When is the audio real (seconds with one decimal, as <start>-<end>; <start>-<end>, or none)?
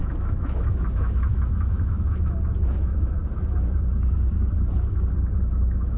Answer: 3.2-5.4